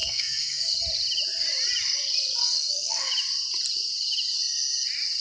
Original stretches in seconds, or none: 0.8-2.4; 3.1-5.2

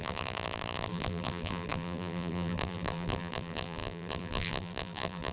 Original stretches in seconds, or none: none

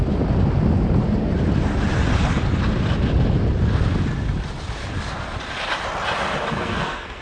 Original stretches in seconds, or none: 0.0-6.5

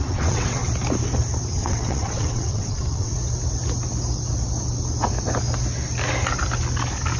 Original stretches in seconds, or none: 0.6-1.5; 3.1-7.2

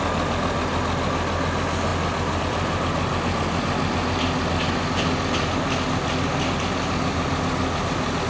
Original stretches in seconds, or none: 0.0-8.3

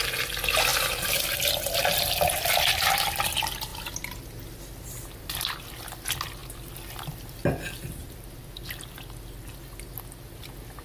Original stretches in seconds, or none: 0.0-0.7; 2.5-10.8

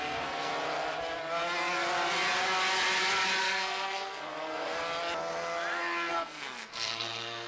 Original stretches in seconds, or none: 0.5-3.4; 4.8-6.1

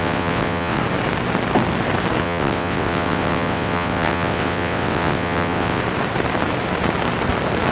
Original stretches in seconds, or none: 0.8-2.2; 5.8-7.7